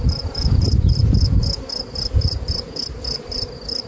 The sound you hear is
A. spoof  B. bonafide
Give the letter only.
B